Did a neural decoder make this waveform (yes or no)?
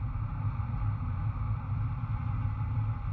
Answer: no